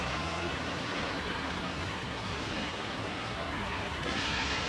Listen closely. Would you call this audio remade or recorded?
remade